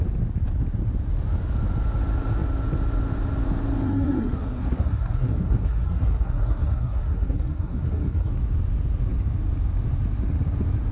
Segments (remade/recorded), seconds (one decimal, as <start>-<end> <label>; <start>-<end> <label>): 0.0-3.8 recorded; 3.8-8.3 remade; 8.3-10.9 recorded